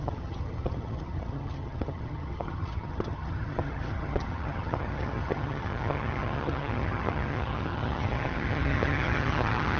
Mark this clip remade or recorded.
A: remade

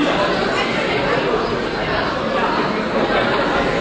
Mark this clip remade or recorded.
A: recorded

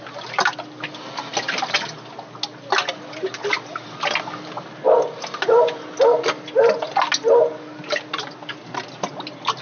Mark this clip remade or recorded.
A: recorded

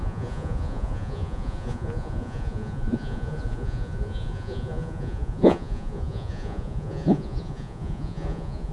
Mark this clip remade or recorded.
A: remade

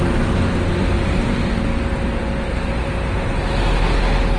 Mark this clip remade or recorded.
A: recorded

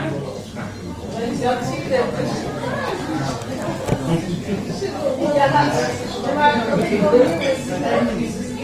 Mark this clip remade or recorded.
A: recorded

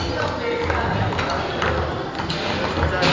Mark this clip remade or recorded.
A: recorded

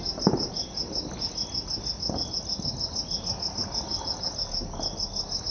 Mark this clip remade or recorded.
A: recorded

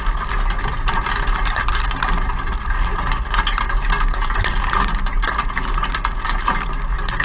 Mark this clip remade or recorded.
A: recorded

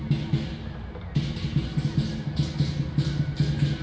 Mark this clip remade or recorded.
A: recorded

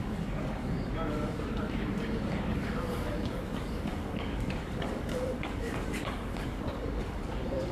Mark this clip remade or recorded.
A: remade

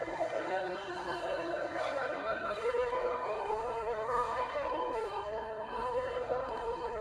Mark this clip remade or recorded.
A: remade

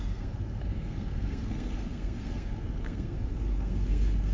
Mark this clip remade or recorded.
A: remade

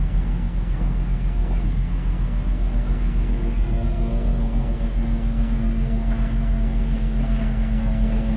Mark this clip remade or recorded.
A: remade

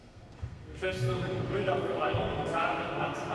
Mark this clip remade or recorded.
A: remade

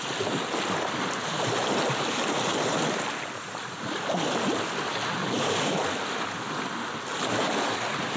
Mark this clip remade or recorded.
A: recorded